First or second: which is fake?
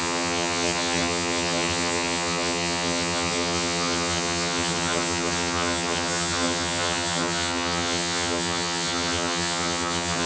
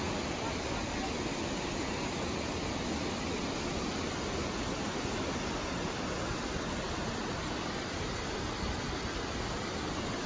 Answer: first